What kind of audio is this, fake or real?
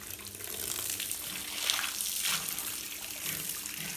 real